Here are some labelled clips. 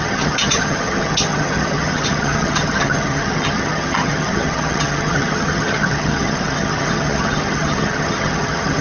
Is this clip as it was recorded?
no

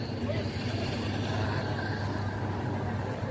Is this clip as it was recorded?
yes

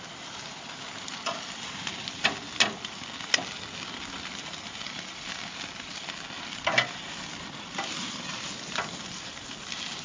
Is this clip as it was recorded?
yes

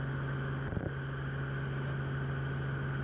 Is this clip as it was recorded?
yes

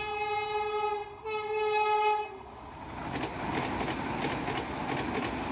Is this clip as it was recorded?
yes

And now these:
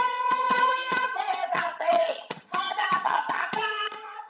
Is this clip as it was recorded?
no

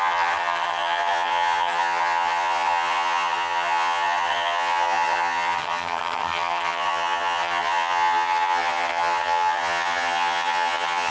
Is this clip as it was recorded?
no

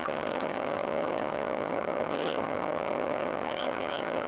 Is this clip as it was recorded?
no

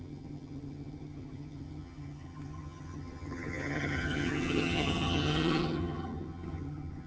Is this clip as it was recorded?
no